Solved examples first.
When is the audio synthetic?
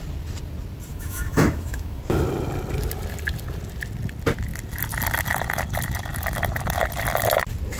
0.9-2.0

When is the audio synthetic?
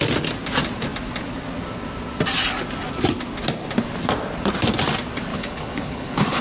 5.3-6.4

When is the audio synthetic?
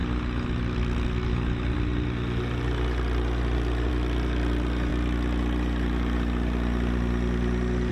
none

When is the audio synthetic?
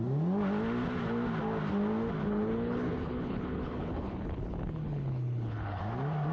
2.2-5.8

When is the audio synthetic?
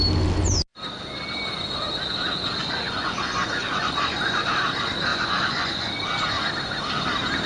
2.6-4.5; 5.1-5.9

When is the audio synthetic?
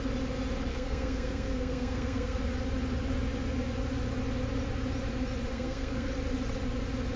0.7-2.4; 5.5-6.1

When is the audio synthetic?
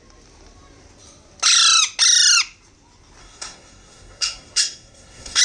3.2-5.4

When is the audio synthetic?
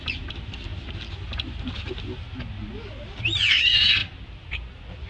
none